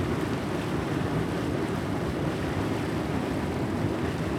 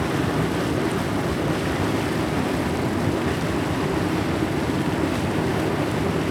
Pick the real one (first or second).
second